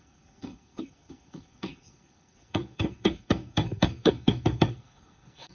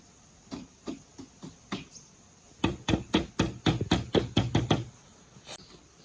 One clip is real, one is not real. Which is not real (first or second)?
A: first